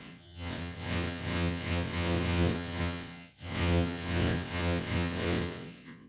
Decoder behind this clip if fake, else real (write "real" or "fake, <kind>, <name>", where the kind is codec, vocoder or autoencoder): fake, vocoder, WaveNeXt